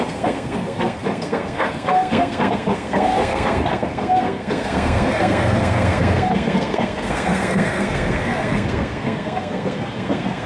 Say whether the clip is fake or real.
fake